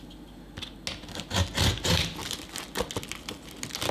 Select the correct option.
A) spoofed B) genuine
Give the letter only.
B